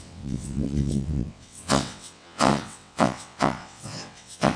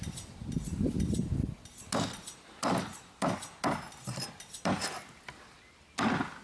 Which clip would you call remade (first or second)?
first